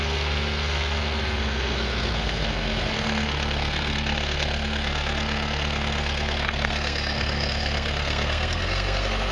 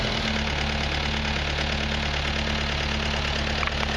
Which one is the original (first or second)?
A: second